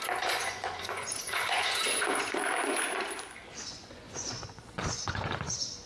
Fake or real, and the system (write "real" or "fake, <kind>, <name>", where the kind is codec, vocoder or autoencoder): fake, vocoder, Vocos